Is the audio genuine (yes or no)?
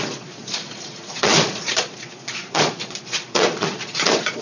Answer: no